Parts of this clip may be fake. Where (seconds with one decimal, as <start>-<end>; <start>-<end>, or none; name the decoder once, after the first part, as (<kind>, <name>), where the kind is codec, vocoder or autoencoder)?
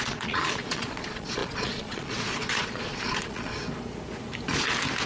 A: 0.0-3.5 (vocoder, Vocos)